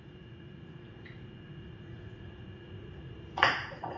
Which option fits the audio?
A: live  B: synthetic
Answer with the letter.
B